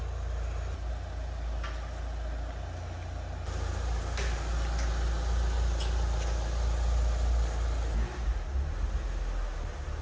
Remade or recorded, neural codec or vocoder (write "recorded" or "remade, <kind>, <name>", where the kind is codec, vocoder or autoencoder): recorded